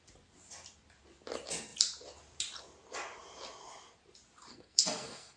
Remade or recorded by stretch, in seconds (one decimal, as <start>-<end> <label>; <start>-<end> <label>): 0.0-4.5 recorded; 4.5-5.4 remade